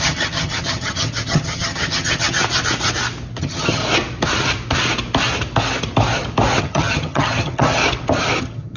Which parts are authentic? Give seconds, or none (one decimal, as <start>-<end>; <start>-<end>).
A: 2.4-3.4; 3.8-6.6; 7.8-8.4